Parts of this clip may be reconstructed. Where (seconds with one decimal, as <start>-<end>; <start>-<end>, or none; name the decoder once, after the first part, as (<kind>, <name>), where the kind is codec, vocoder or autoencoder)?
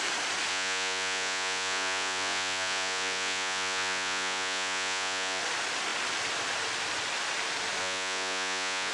0.5-5.4 (vocoder, Vocos); 7.8-8.9